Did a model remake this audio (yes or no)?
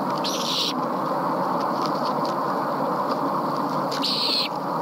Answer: no